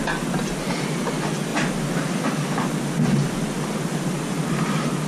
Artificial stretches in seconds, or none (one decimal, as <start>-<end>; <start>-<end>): none